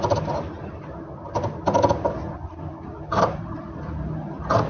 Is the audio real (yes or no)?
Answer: yes